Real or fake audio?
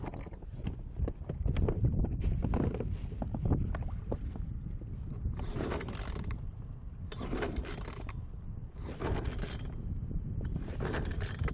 real